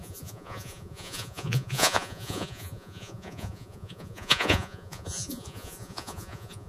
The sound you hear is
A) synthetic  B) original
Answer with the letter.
A